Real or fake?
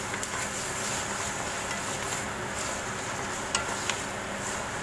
real